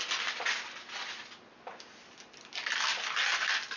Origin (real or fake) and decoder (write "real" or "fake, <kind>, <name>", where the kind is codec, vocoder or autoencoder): real